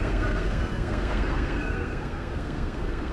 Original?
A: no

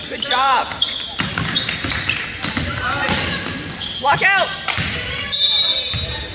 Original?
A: yes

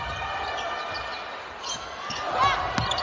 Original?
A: yes